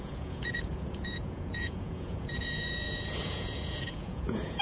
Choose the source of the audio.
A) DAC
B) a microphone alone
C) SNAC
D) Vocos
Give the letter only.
D